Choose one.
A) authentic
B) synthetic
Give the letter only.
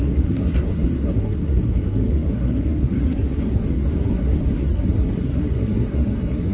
B